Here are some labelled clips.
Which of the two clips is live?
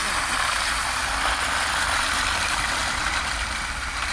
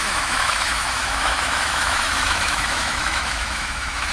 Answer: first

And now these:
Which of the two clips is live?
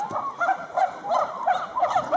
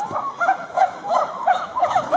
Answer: first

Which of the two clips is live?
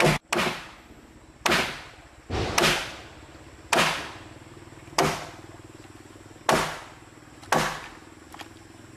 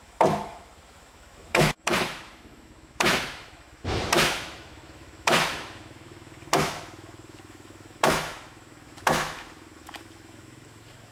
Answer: first